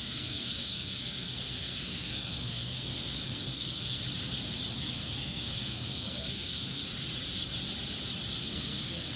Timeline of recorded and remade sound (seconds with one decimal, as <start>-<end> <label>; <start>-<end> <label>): 0.0-4.0 remade; 4.0-4.8 recorded; 4.8-6.8 remade; 6.8-8.4 recorded; 8.4-9.2 remade